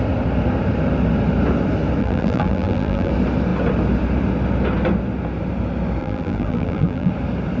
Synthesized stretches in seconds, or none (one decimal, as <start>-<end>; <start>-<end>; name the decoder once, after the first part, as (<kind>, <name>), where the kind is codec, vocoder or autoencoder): 2.0-3.1 (vocoder, BigVGAN v2); 6.0-7.1

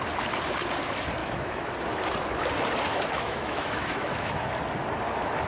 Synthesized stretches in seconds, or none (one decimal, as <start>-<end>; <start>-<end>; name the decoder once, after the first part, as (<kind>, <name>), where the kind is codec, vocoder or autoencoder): 1.2-1.7 (autoencoder, DAC-VAE); 2.9-4.5